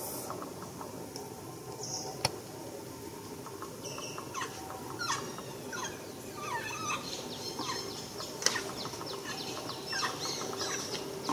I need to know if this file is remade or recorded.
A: recorded